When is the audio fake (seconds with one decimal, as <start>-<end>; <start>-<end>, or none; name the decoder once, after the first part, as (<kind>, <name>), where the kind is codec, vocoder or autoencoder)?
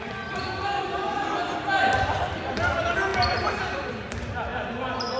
0.0-1.4 (vocoder, BigVGAN v2); 2.3-4.5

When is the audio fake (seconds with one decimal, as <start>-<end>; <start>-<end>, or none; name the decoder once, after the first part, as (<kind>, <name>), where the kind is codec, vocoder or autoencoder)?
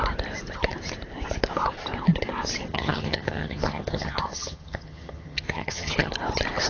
2.7-6.1 (vocoder, HiFi-GAN)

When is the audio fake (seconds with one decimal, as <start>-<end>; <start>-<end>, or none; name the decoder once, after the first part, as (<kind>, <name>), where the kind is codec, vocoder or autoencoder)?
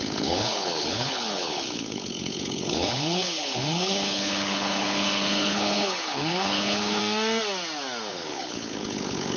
0.0-7.0 (codec, HILCodec); 8.1-9.4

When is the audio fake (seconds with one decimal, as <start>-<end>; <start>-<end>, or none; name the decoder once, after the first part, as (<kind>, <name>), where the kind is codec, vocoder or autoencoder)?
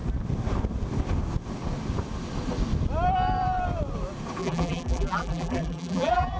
4.4-6.4 (vocoder, BigVGAN v2)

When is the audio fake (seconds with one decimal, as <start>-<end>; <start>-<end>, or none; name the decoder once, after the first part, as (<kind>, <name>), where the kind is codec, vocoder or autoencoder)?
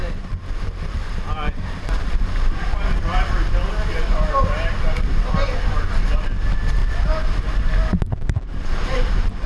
0.0-2.8 (vocoder, BigVGAN v2); 6.8-9.1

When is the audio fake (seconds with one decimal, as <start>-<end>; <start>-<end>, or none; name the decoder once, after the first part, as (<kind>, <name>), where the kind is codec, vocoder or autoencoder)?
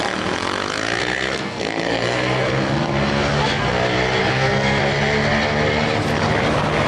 1.0-2.5 (codec, SNAC); 4.2-4.8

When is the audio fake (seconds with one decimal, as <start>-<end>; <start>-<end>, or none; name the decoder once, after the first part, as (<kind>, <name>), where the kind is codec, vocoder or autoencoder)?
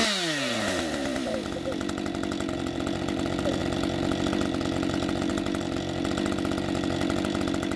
none